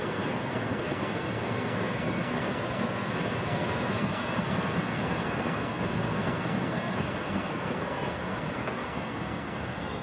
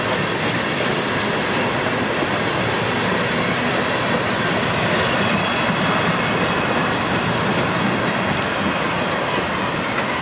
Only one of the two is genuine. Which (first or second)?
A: second